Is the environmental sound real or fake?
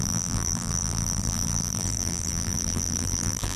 fake